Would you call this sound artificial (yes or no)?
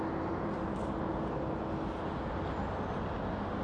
no